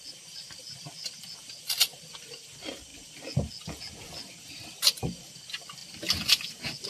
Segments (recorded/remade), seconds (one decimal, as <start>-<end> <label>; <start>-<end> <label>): 0.0-6.9 recorded